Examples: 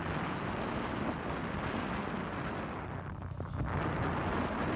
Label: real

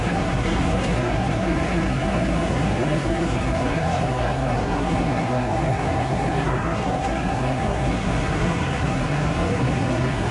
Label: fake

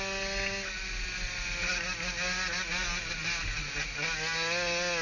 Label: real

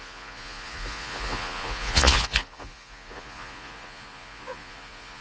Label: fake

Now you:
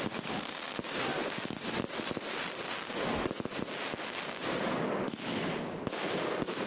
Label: real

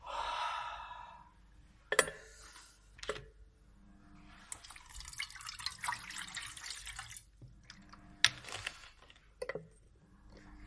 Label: real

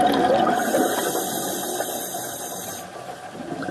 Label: real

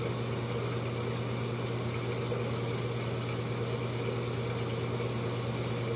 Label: real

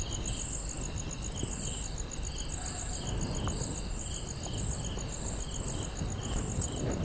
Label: real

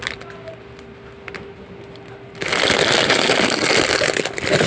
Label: real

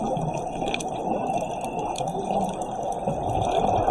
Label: real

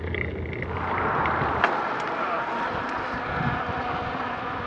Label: real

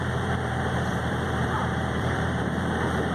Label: fake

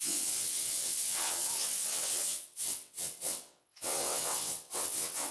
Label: fake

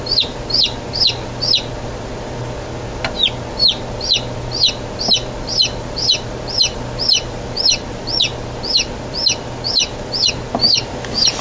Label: real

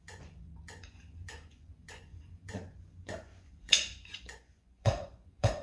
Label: fake